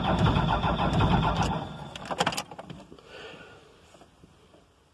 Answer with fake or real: real